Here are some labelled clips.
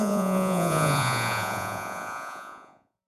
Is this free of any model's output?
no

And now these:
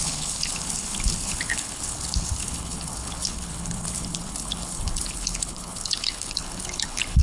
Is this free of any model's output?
no